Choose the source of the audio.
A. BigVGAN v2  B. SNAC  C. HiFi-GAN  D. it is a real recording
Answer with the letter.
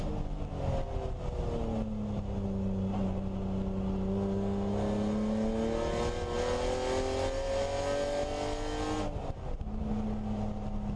D